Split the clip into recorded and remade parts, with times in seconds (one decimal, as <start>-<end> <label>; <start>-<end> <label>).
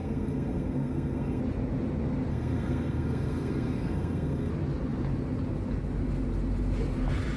0.0-1.4 remade; 1.4-2.3 recorded; 2.3-4.5 remade; 4.5-7.4 recorded